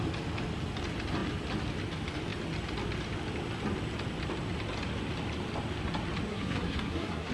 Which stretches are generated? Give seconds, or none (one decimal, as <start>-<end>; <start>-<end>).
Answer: 6.3-7.3